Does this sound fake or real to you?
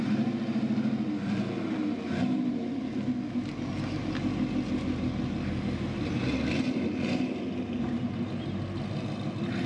real